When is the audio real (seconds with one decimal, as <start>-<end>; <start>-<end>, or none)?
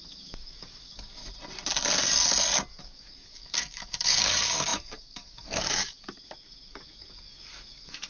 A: 1.2-2.8